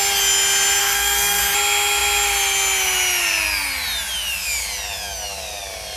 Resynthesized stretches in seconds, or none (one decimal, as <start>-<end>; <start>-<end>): 0.8-1.4